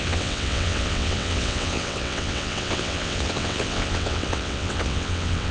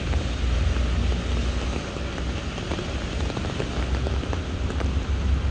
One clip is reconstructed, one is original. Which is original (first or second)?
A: second